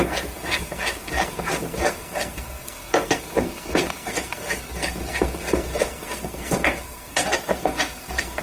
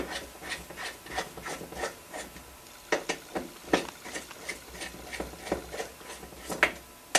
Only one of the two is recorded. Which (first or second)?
second